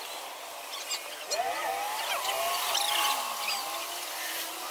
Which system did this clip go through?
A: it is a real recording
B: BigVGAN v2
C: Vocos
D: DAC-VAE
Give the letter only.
A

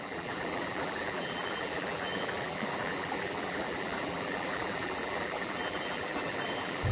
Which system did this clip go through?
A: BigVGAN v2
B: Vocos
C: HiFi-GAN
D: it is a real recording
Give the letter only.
A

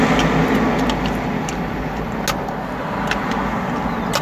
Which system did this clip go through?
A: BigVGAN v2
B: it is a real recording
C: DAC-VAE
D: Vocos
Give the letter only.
B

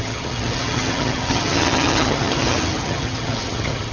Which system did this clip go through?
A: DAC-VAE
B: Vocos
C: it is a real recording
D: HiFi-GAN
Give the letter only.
D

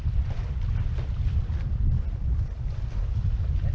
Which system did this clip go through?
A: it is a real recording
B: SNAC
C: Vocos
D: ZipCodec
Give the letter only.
A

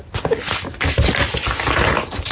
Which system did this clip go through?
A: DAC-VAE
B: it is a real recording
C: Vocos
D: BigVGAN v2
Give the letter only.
B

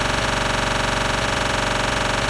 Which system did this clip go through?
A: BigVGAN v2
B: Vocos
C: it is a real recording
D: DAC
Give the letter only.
B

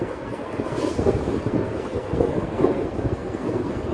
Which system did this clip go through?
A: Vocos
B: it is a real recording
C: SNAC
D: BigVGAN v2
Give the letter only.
C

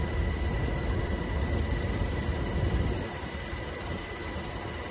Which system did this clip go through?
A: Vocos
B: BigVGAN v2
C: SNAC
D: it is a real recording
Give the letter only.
B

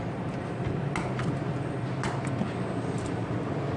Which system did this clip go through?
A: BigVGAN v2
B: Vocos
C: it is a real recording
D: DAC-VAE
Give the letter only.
C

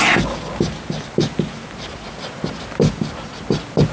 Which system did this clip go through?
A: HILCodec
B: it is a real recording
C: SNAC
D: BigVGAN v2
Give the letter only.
B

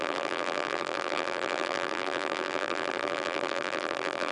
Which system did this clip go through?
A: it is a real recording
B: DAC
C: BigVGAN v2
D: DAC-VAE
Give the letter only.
C